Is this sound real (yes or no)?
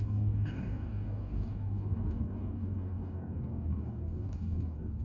no